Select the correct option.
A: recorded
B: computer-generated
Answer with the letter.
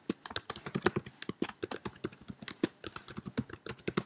A